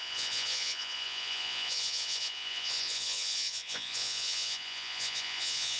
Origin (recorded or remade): remade